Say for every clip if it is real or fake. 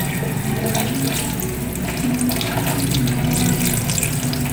real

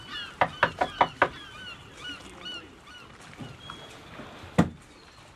real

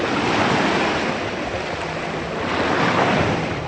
real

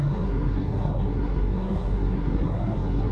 fake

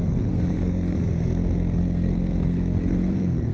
fake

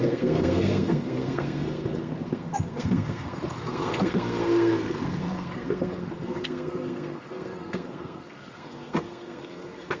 fake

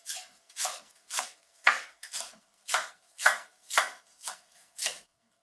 fake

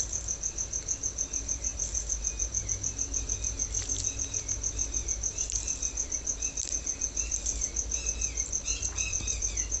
real